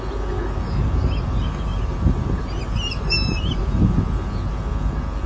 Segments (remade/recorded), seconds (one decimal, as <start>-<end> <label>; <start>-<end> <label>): 0.0-1.7 recorded; 1.7-3.6 remade; 3.6-5.3 recorded